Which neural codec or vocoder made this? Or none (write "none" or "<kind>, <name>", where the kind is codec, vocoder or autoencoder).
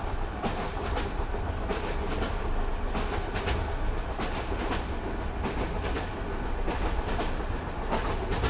none